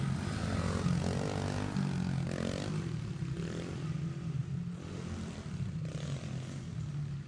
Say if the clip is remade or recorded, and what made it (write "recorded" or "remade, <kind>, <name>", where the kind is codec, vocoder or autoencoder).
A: recorded